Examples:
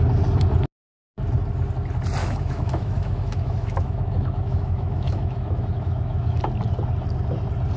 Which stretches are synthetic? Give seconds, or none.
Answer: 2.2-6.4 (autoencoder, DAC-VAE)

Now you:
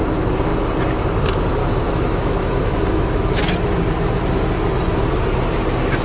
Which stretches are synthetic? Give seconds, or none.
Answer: 1.6-3.9 (autoencoder, DAC-VAE)

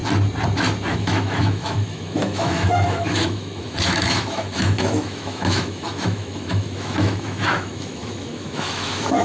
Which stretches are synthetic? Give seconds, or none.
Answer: 0.9-9.2 (autoencoder, DAC-VAE)